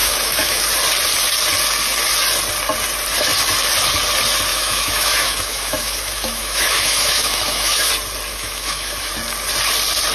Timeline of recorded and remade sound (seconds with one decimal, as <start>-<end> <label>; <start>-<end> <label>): 0.0-0.6 remade; 0.6-4.5 recorded; 4.5-7.9 remade; 7.9-8.3 recorded; 8.3-9.1 remade; 9.1-10.1 recorded